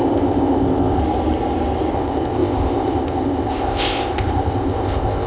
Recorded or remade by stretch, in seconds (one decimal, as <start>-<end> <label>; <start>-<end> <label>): 0.0-1.0 remade; 1.0-1.9 recorded; 1.9-5.3 remade